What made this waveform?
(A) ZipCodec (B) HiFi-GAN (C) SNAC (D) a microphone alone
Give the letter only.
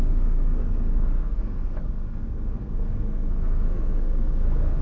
C